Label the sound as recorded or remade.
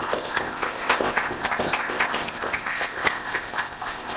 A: remade